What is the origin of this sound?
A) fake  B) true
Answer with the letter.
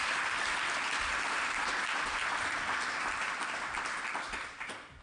B